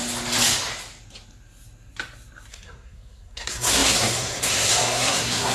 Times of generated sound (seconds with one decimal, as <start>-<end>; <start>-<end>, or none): 2.5-5.5